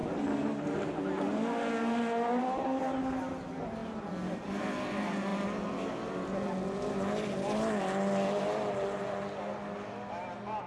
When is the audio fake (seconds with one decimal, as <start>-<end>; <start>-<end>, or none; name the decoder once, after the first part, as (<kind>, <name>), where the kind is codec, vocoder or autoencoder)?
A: none

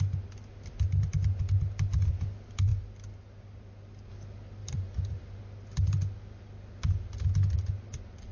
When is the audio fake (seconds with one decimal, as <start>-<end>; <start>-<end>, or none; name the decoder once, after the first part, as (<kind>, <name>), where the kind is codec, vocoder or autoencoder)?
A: 4.6-5.4 (vocoder, BigVGAN v2)

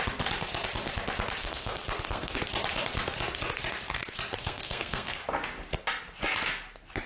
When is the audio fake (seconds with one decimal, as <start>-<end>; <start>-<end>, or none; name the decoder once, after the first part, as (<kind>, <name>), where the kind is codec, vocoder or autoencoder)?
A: 1.4-2.4 (codec, SNAC); 4.4-5.2

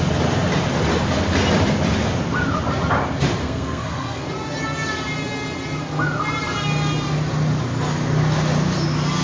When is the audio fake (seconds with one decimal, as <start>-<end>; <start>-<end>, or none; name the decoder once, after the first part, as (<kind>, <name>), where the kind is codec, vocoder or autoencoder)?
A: 3.4-4.2 (codec, SNAC)